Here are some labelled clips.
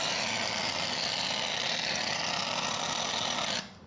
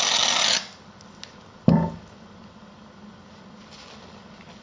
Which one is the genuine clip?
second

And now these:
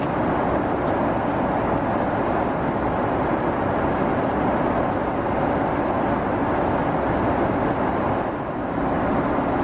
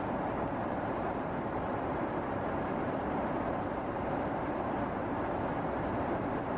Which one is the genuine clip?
first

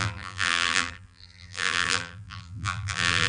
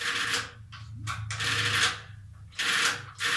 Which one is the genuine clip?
second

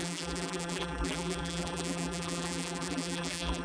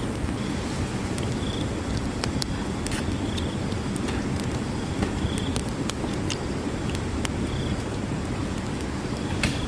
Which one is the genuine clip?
second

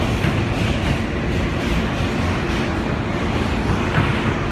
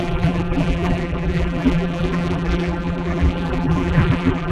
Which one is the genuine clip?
first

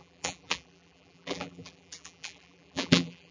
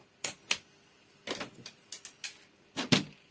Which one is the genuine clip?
second